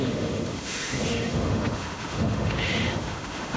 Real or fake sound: fake